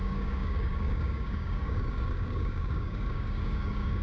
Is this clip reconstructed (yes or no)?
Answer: yes